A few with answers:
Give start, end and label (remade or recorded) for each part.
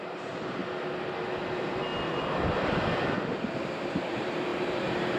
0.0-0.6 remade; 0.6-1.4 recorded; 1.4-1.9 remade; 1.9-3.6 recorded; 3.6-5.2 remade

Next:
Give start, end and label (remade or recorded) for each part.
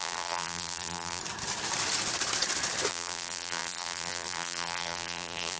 0.0-1.2 remade; 1.2-2.9 recorded; 2.9-5.6 remade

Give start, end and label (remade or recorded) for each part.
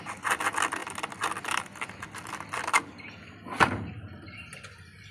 0.0-5.1 recorded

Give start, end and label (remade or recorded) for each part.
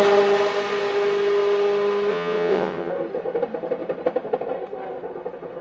0.0-2.1 recorded; 2.1-2.9 remade; 2.9-5.6 recorded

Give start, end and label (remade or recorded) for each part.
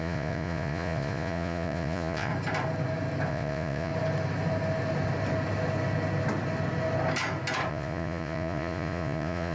0.0-2.3 remade; 2.3-3.3 recorded; 3.3-3.9 remade; 3.9-7.7 recorded; 7.7-9.5 remade